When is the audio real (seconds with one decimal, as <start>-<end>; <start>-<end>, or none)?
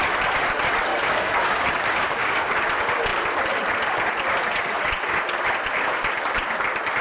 0.0-0.9; 2.5-7.0